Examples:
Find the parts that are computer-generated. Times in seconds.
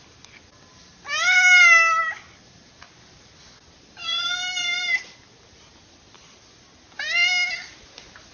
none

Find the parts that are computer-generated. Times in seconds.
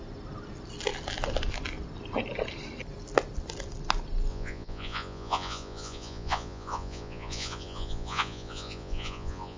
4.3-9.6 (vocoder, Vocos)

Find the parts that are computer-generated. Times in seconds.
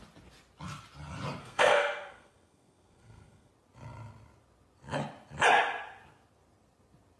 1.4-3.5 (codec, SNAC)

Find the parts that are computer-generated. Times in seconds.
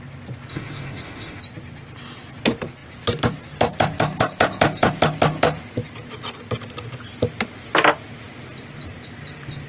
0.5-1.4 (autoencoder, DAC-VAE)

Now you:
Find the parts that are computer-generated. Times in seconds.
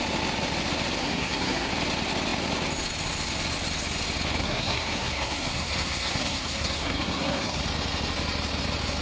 1.0-1.7 (codec, SNAC); 4.4-7.6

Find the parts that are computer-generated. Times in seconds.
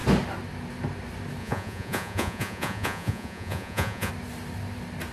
1.4-4.1 (vocoder, Vocos)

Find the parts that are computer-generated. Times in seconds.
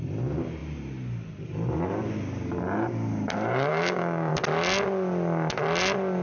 3.7-4.3 (codec, DAC)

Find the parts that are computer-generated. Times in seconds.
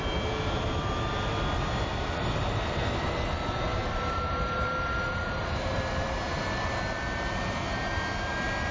3.8-6.4 (vocoder, BigVGAN v2)